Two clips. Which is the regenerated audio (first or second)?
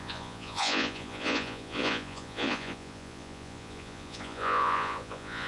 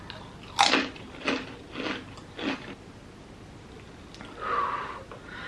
first